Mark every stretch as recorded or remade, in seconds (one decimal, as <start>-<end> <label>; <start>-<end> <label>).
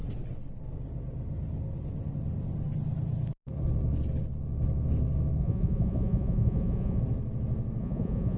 0.0-5.4 recorded; 5.4-7.0 remade; 7.0-7.8 recorded; 7.8-8.4 remade